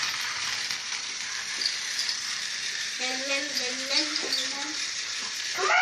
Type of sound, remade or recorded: remade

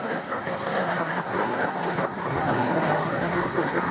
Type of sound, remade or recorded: remade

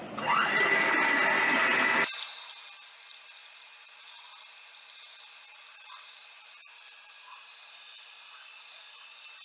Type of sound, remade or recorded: recorded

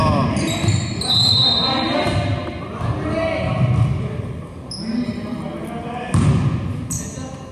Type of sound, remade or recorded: recorded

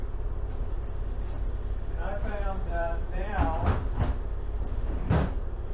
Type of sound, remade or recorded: remade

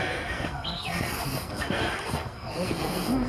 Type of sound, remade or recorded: remade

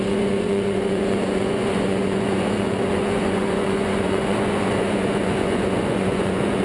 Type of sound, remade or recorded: remade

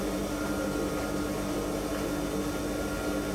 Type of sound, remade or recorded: recorded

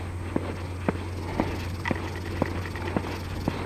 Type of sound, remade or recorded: recorded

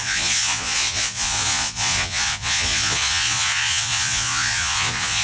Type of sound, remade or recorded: remade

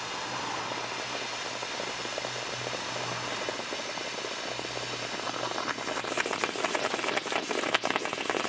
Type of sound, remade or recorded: recorded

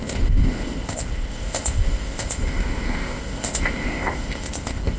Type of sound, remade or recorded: remade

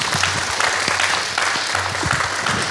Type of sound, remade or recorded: recorded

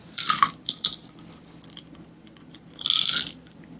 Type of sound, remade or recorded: recorded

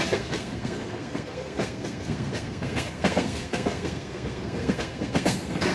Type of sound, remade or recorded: remade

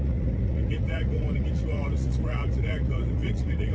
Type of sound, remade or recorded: remade